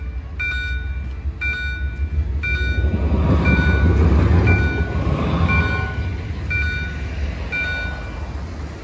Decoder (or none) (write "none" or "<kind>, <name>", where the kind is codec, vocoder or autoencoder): none